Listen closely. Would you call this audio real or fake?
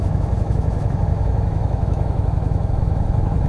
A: fake